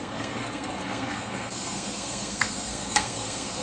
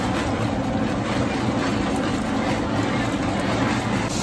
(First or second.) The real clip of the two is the second